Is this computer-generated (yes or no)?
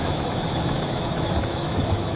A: yes